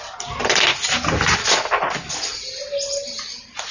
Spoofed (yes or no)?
no